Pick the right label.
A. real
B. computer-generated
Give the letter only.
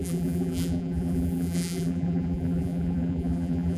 B